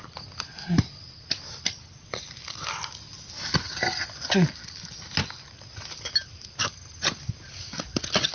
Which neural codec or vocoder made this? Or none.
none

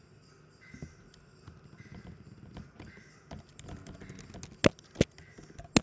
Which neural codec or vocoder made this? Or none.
none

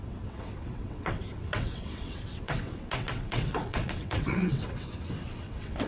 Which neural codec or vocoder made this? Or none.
vocoder, WaveNeXt